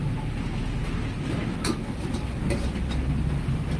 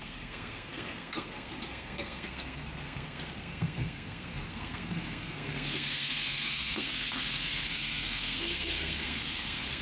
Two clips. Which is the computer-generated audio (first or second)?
second